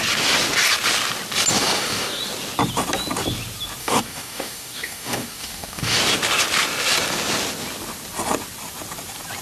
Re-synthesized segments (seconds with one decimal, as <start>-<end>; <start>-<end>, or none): 1.5-2.2; 3.8-6.0